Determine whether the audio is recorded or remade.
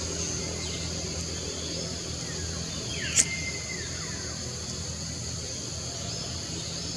recorded